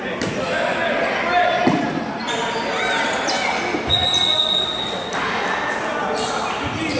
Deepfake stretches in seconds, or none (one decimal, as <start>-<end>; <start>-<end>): none